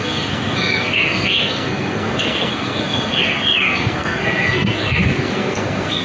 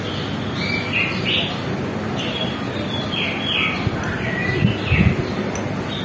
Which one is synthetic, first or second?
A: first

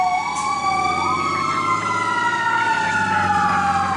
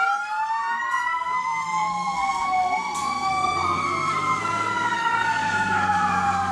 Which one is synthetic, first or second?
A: second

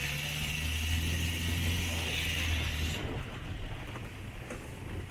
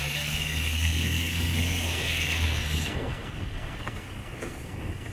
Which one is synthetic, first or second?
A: second